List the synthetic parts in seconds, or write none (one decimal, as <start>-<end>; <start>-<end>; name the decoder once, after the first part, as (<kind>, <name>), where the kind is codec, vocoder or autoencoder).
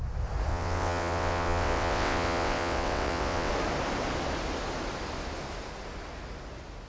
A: 0.5-3.5 (vocoder, WaveNeXt)